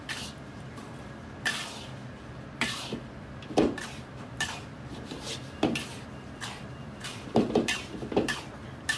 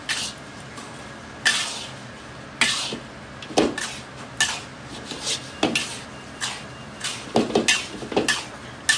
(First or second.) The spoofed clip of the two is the first